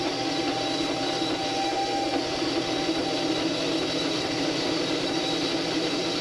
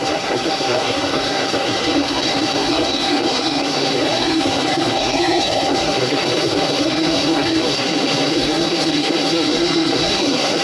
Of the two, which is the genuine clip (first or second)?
first